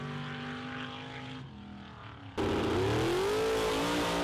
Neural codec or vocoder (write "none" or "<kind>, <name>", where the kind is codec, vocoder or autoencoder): none